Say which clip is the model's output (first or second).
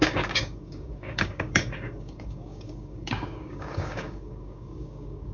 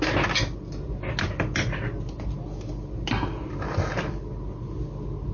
first